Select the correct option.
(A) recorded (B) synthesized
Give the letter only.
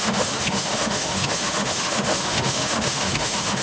B